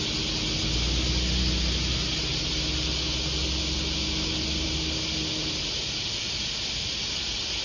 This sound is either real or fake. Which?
real